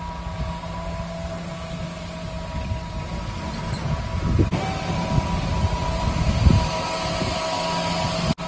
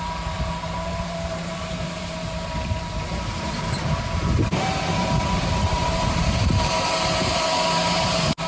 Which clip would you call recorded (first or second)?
first